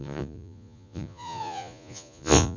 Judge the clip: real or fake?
fake